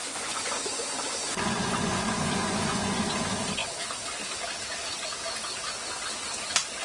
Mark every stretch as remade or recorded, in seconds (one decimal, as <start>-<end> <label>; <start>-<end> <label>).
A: 0.0-3.0 remade; 3.0-6.8 recorded